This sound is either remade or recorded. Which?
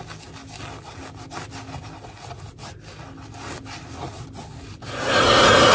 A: recorded